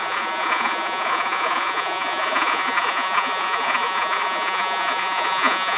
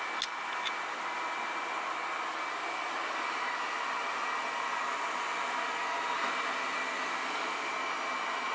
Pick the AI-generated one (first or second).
first